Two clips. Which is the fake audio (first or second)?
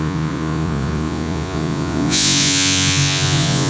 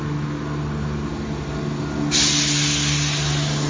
first